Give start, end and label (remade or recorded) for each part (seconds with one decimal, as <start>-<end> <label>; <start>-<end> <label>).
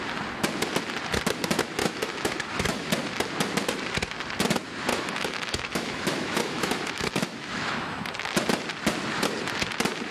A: 0.0-1.8 recorded; 1.8-2.9 remade; 2.9-4.9 recorded; 4.9-8.0 remade; 8.0-10.1 recorded